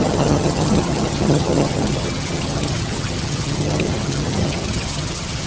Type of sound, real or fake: fake